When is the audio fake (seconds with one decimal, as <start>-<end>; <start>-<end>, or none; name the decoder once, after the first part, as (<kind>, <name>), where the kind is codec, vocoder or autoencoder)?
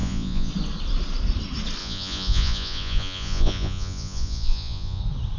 0.0-0.5 (vocoder, Vocos); 1.8-5.0